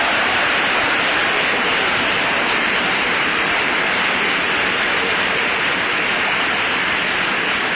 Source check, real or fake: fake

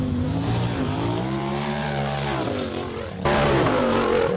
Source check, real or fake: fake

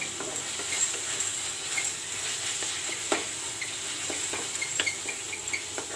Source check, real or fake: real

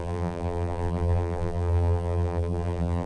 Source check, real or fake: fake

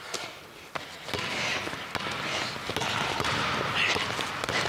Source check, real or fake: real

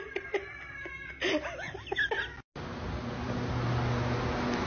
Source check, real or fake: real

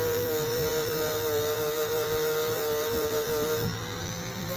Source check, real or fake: fake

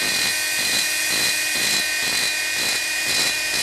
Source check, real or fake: real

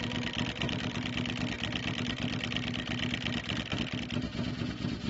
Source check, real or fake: real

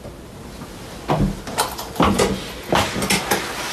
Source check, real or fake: real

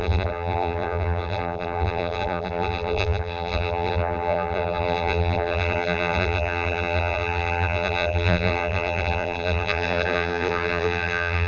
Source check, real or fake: fake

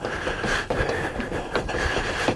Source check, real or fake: fake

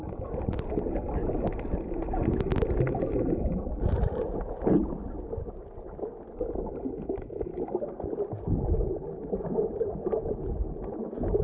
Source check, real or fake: real